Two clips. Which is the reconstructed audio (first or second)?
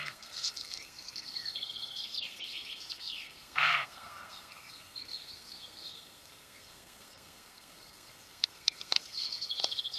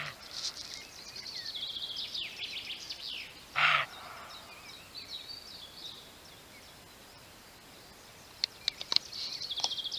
first